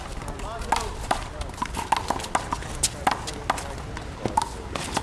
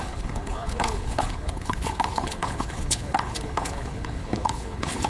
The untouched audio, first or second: first